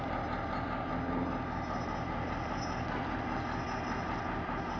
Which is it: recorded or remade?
recorded